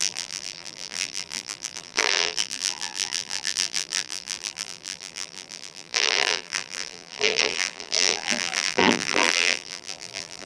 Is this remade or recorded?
remade